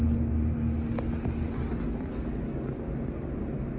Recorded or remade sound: recorded